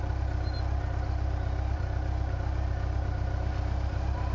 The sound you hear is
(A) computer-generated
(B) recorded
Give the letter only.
B